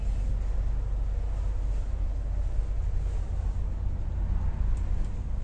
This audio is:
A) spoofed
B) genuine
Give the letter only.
B